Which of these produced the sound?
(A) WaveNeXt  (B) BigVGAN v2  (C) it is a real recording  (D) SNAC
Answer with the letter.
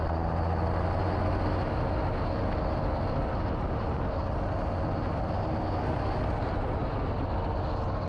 C